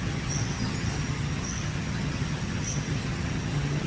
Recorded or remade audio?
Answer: remade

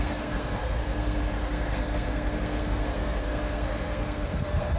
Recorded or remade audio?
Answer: remade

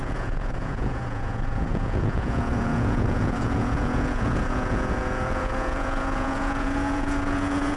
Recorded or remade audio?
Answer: remade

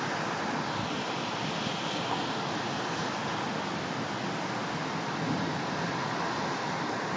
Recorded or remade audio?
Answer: recorded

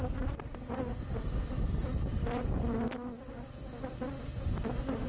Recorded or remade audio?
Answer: recorded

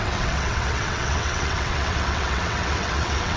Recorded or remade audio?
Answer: remade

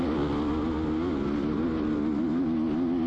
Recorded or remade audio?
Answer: recorded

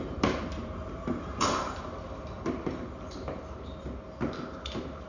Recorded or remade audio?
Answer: remade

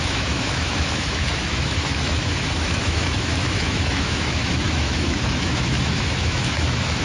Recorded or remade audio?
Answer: remade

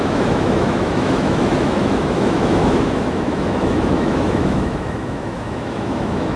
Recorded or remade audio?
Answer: remade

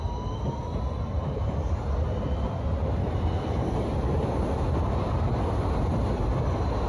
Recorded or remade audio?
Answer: recorded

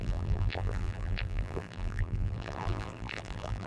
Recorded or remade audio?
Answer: remade